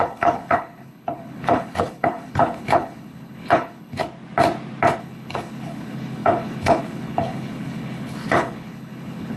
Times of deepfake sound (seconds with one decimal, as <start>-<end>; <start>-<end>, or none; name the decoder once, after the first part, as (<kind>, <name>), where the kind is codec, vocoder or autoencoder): 0.0-4.0 (codec, HILCodec); 5.0-9.4